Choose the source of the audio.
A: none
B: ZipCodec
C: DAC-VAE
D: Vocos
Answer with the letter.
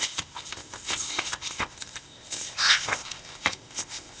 B